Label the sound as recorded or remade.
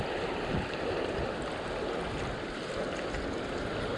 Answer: recorded